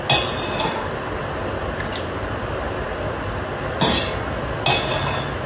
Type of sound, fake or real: real